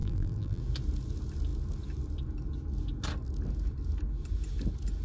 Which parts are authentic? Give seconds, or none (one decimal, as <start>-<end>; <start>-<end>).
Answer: 0.6-5.0